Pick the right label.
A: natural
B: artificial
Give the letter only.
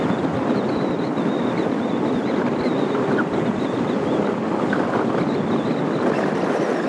A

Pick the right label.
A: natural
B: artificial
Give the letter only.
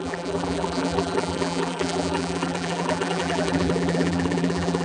B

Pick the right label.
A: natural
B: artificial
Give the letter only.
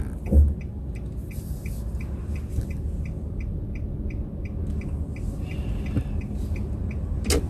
A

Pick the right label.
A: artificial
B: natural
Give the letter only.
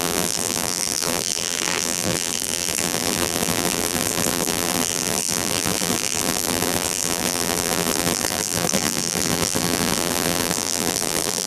A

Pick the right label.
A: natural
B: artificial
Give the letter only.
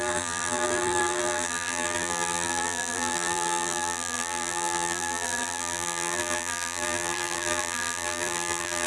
B